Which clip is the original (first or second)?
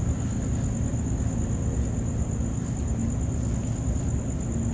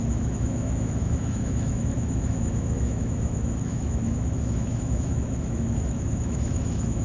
first